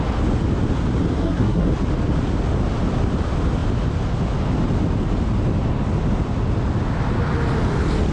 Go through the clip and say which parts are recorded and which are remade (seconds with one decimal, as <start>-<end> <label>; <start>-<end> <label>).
0.0-1.1 recorded; 1.1-1.7 remade; 1.7-8.1 recorded